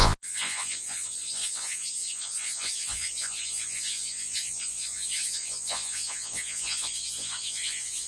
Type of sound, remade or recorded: remade